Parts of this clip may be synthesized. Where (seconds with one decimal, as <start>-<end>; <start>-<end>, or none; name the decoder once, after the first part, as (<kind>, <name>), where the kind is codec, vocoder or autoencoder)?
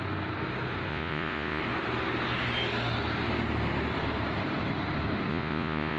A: 0.9-1.6 (vocoder, Vocos); 5.3-6.0